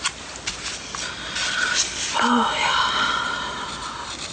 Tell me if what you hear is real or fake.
real